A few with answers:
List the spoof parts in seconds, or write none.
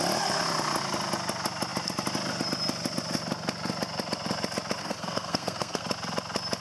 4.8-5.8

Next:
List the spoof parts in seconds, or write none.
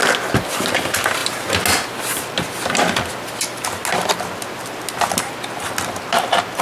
none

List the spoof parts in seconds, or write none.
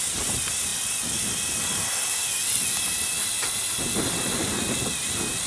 none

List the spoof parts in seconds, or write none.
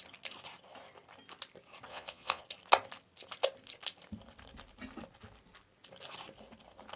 1.9-2.4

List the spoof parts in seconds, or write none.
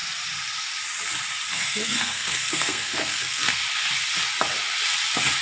1.5-3.6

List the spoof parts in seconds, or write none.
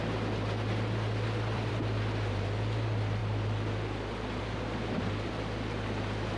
0.0-3.2; 4.4-6.4